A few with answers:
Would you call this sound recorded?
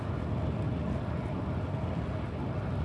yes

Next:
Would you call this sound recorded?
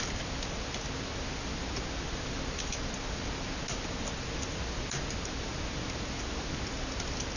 yes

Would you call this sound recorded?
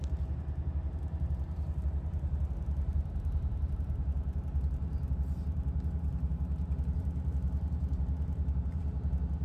no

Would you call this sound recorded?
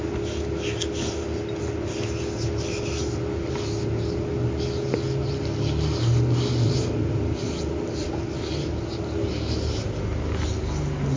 yes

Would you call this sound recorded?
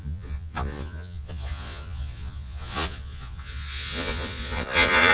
no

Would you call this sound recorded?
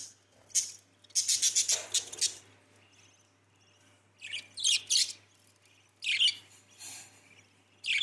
yes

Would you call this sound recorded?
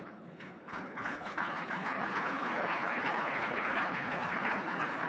no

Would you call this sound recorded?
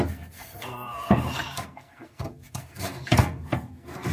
no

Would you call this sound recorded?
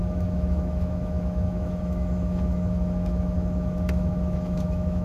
no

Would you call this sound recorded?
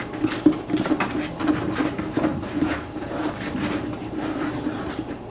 no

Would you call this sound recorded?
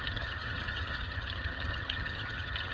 no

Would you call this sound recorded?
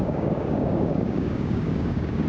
no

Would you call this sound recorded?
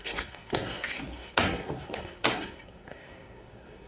no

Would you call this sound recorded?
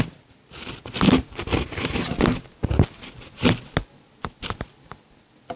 yes